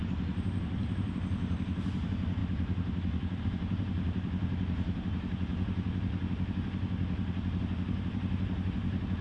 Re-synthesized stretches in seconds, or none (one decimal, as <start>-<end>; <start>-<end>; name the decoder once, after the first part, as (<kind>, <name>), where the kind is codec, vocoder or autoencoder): 0.0-2.4 (vocoder, BigVGAN v2); 3.4-5.5; 7.6-9.2

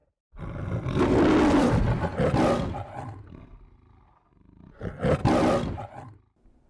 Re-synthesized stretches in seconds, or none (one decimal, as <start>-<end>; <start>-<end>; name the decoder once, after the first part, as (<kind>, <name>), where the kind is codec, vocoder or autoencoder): 0.0-0.6 (vocoder, BigVGAN v2)

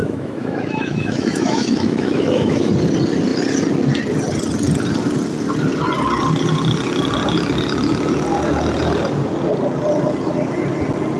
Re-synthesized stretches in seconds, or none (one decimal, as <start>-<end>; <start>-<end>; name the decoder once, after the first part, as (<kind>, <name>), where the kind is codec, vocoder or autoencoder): 0.0-2.7 (autoencoder, DAC-VAE)

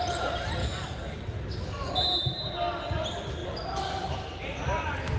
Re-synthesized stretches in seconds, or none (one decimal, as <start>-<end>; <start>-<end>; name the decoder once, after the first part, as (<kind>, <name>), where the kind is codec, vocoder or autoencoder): 0.6-1.9 (codec, DAC)